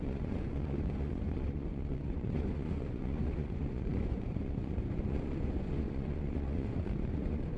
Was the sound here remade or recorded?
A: remade